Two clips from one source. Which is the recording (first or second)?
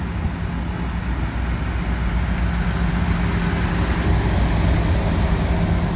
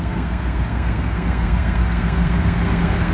first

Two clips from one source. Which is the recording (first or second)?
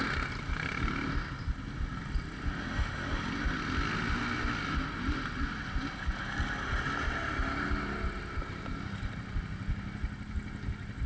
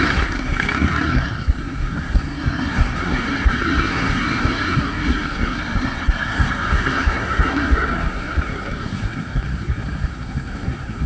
first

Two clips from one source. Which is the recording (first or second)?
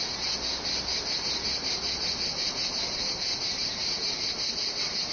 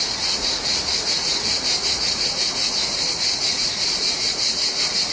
first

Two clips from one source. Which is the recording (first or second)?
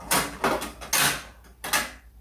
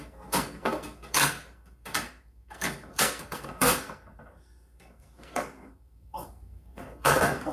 first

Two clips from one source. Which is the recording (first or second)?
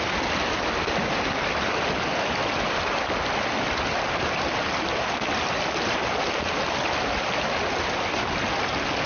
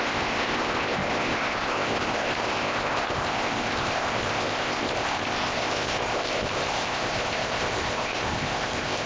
first